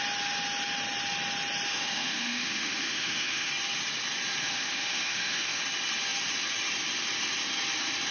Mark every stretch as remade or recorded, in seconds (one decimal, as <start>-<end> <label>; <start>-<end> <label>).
0.0-1.7 recorded; 1.7-3.5 remade; 3.5-4.4 recorded; 4.4-5.6 remade; 5.6-8.1 recorded

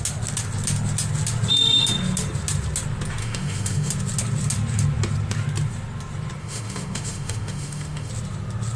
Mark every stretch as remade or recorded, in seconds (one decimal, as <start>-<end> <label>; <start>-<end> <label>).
0.0-3.2 recorded; 3.2-3.9 remade; 3.9-6.4 recorded; 6.4-8.1 remade; 8.1-8.8 recorded

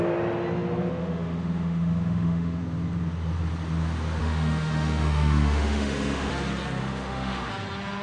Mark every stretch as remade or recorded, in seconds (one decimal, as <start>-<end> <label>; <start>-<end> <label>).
0.0-1.0 recorded; 1.0-2.6 remade; 2.6-4.2 recorded; 4.2-6.3 remade; 6.3-6.8 recorded; 6.8-7.5 remade; 7.5-8.0 recorded

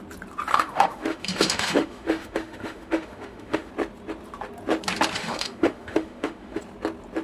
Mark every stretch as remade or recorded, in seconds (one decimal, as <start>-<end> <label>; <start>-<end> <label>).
0.0-0.5 recorded; 0.5-3.7 remade; 3.7-5.2 recorded; 5.2-6.6 remade; 6.6-7.2 recorded

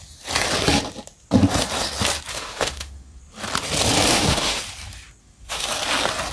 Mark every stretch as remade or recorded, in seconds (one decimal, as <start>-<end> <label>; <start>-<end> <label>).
0.0-2.3 recorded; 2.3-3.2 remade; 3.2-4.1 recorded; 4.1-4.6 remade; 4.6-5.2 recorded; 5.2-5.7 remade; 5.7-6.3 recorded

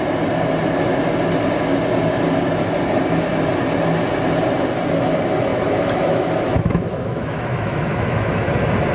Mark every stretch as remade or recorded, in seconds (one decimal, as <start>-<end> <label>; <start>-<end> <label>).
0.0-5.5 recorded; 5.5-8.5 remade; 8.5-8.9 recorded

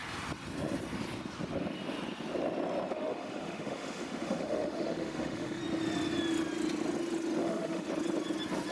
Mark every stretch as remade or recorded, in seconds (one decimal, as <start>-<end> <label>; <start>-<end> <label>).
0.0-2.9 recorded; 2.9-5.6 remade; 5.6-7.4 recorded; 7.4-7.9 remade; 7.9-8.7 recorded